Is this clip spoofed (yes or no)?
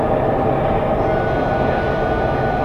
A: no